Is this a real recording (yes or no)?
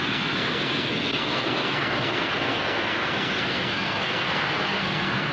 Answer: no